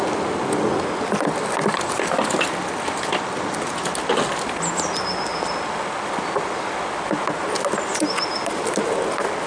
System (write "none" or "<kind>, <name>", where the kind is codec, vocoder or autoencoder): none